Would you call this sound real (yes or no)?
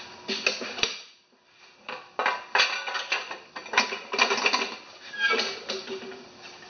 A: yes